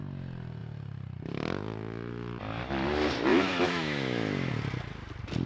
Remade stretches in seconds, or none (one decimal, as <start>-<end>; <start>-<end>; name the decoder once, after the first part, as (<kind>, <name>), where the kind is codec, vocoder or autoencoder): 3.3-4.5 (autoencoder, DAC-VAE)